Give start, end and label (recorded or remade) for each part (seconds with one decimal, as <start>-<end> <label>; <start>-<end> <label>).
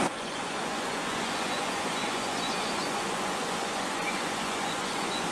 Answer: 0.0-5.3 remade